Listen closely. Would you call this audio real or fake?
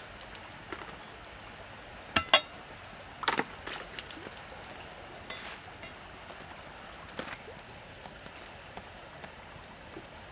real